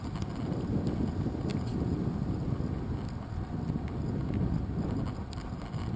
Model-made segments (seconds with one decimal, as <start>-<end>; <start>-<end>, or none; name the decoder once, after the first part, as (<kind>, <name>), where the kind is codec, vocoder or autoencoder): none